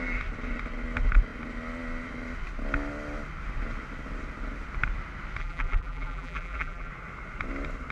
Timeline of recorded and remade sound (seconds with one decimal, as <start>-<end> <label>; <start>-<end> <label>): 0.0-5.4 recorded; 5.4-6.9 remade; 6.9-7.9 recorded